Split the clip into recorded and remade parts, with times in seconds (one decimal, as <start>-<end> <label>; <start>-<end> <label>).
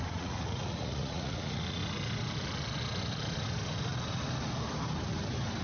0.0-1.8 remade; 1.8-5.6 recorded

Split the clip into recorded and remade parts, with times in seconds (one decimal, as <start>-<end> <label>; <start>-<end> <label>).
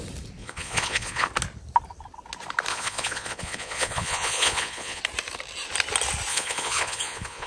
0.0-0.4 recorded; 0.4-1.3 remade; 1.3-2.7 recorded; 2.7-5.0 remade; 5.0-6.3 recorded; 6.3-7.5 remade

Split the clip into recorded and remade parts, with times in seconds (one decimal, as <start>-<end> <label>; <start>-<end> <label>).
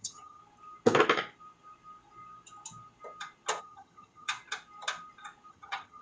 0.0-0.4 remade; 0.4-3.6 recorded; 3.6-4.3 remade; 4.3-5.5 recorded; 5.5-6.0 remade